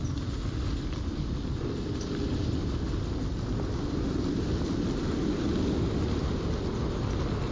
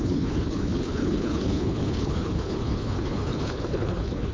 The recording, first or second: first